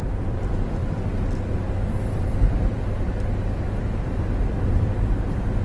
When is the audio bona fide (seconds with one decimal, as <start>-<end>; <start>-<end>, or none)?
0.8-1.9